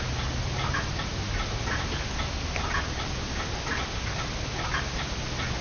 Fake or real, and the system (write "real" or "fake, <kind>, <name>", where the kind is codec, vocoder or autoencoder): real